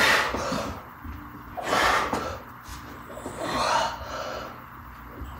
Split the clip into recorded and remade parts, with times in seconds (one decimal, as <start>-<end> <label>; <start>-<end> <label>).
0.0-5.4 recorded

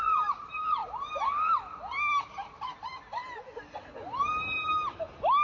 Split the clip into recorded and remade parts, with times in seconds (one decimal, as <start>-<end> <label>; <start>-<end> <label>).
0.0-0.8 remade; 0.8-2.2 recorded; 2.2-3.2 remade; 3.2-3.8 recorded; 3.8-5.4 remade

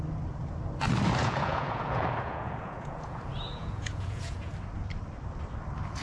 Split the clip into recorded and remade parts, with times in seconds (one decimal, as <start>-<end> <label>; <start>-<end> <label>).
0.0-1.2 recorded; 1.2-4.5 remade; 4.5-6.0 recorded

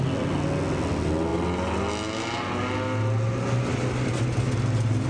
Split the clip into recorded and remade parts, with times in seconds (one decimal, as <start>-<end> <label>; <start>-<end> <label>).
0.0-5.1 recorded

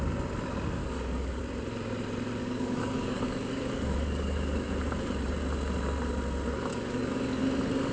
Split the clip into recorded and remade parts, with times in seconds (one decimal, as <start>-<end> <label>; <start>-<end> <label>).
0.0-0.8 recorded; 0.8-1.4 remade; 1.4-2.4 recorded; 2.4-4.7 remade; 4.7-6.7 recorded; 6.7-7.4 remade; 7.4-7.9 recorded

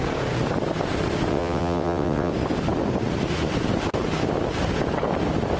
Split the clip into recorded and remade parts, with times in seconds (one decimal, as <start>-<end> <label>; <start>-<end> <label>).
0.0-1.3 recorded; 1.3-2.3 remade; 2.3-5.6 recorded

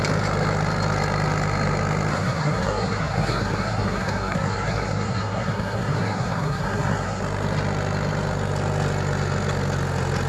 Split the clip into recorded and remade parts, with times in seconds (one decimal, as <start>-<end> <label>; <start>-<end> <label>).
0.0-2.1 recorded; 2.1-7.2 remade; 7.2-10.3 recorded